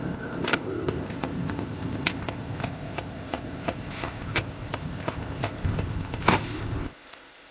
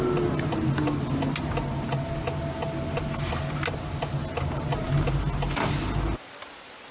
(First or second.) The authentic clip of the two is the second